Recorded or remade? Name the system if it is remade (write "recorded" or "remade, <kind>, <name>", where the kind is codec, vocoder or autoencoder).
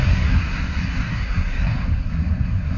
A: remade, codec, SNAC